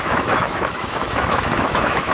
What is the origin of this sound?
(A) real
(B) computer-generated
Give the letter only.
B